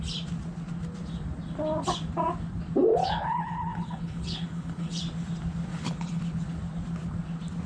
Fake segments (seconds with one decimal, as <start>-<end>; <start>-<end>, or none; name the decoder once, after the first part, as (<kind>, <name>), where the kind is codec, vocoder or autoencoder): 3.0-5.0 (codec, HILCodec); 5.7-6.2